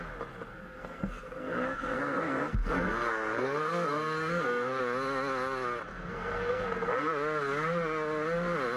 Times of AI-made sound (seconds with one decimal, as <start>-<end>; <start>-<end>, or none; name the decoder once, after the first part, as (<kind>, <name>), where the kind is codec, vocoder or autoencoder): 0.5-4.8 (codec, SNAC); 5.9-7.1